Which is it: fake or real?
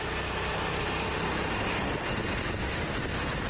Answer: real